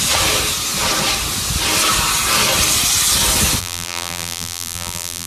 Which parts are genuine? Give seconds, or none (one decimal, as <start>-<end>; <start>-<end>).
0.0-3.6